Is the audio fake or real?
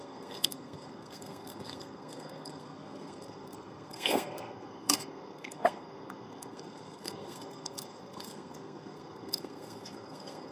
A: fake